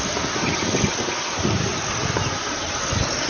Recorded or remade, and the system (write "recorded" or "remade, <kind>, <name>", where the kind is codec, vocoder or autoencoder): recorded